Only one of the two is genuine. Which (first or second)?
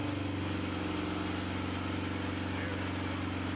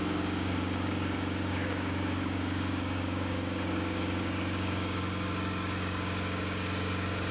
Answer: first